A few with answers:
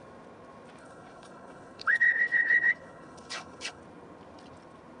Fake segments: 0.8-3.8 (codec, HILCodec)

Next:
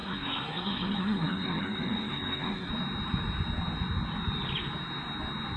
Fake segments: 0.0-2.7 (codec, SNAC)

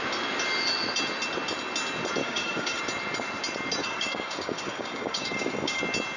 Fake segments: 2.2-2.8 (codec, DAC); 3.8-5.8

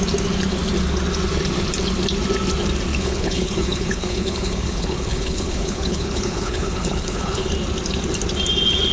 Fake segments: 2.9-7.5 (codec, HILCodec)

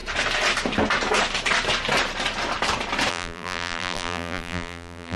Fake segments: 3.1-5.2 (vocoder, BigVGAN v2)

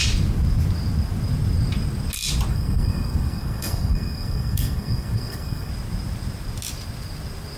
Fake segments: 2.5-5.7 (codec, SNAC)

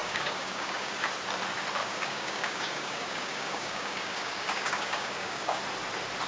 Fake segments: 0.0-1.1 (codec, DAC); 1.8-5.6